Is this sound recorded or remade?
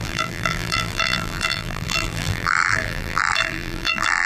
remade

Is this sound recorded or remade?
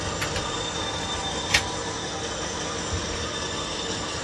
recorded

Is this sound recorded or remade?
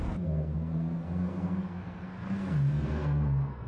remade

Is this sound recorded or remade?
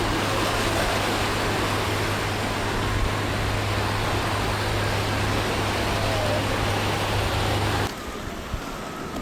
recorded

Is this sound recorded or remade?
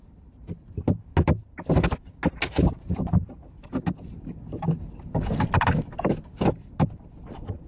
recorded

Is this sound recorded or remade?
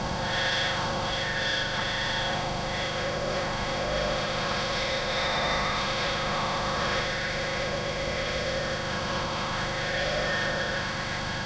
remade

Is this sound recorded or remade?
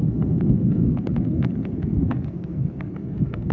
remade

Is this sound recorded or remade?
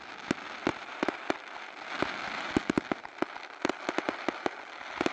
recorded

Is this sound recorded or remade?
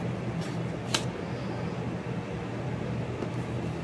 recorded